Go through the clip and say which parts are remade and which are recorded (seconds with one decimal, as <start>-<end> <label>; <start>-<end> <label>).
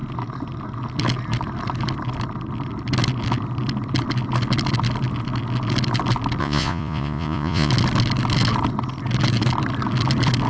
0.0-6.4 recorded; 6.4-7.7 remade; 7.7-10.5 recorded